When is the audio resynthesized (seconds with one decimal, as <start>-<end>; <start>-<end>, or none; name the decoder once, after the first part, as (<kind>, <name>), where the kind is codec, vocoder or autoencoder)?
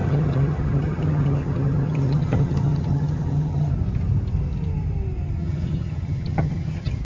0.0-3.7 (vocoder, HiFi-GAN); 5.4-7.0